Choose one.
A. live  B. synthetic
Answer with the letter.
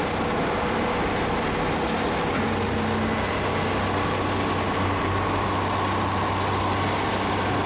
A